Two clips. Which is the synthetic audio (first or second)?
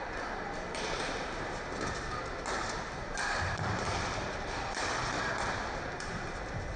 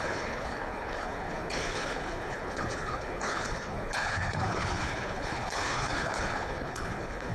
second